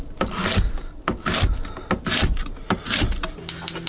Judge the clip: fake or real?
real